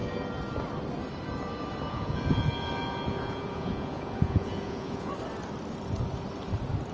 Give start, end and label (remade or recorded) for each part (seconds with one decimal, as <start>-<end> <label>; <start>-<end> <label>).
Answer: 0.0-1.9 recorded; 1.9-5.1 remade; 5.1-6.9 recorded